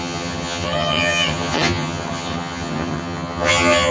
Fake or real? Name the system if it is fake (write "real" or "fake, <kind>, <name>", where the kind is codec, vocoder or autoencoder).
fake, vocoder, HiFi-GAN